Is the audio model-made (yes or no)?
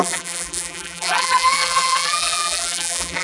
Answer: yes